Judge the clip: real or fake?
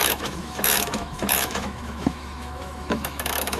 fake